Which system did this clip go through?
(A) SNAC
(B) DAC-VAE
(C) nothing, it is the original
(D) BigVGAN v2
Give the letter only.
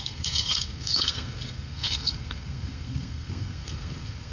A